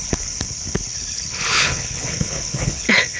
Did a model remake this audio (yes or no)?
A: yes